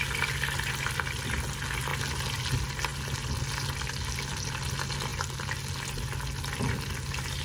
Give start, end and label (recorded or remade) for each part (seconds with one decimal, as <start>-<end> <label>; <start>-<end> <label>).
0.0-7.4 recorded